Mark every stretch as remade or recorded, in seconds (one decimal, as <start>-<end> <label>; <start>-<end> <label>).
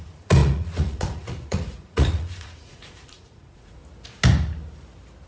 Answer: 0.0-3.8 remade; 3.8-5.3 recorded